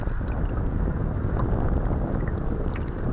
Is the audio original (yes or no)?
yes